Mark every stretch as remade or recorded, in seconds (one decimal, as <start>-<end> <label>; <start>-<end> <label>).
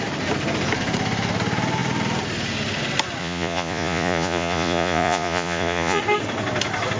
0.0-3.2 recorded; 3.2-6.0 remade; 6.0-7.0 recorded